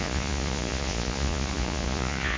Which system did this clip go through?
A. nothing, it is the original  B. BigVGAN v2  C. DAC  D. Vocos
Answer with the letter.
D